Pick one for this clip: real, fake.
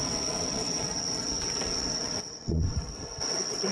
fake